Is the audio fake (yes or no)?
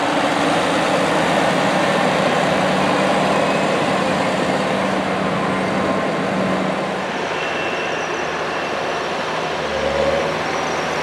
no